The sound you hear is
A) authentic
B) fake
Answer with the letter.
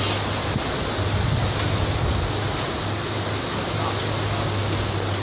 A